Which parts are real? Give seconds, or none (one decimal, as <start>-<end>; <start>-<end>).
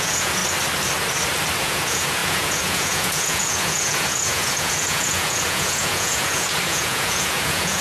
0.4-1.6